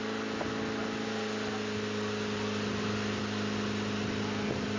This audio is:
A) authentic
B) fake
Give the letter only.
A